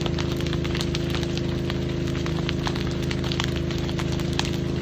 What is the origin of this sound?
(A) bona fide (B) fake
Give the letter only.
A